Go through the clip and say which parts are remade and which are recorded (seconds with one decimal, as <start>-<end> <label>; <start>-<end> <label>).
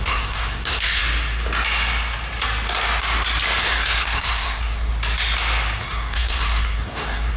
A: 0.0-1.0 remade; 1.0-3.6 recorded; 3.6-4.9 remade; 4.9-5.8 recorded; 5.8-7.4 remade